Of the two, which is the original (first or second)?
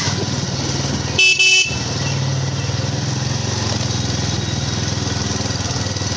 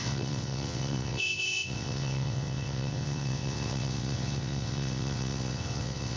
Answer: first